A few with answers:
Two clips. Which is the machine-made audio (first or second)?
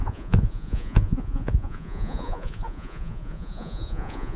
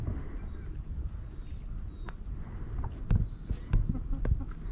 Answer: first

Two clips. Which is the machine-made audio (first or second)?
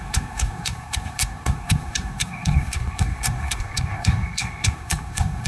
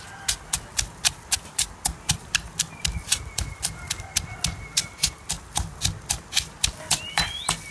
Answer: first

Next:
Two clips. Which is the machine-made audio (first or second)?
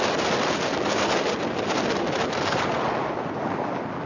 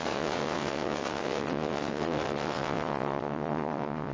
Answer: second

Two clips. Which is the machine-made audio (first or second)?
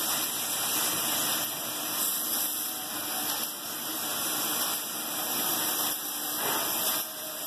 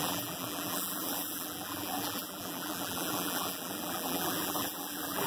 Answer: second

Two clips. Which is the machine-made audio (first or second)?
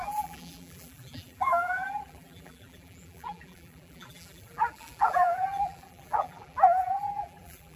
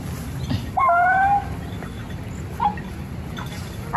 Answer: first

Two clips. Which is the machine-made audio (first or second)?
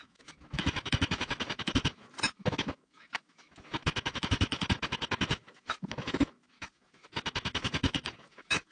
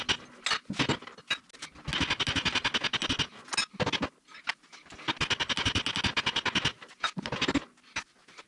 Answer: first